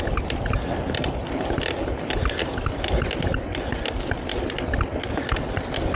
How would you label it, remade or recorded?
recorded